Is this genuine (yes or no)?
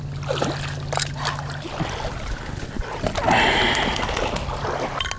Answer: yes